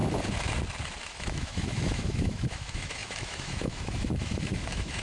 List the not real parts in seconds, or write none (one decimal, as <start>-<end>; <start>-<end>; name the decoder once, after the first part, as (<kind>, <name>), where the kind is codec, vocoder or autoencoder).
1.0-5.0 (autoencoder, DAC-VAE)